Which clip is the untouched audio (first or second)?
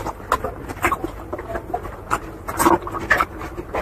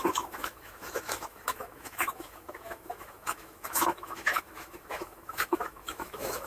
first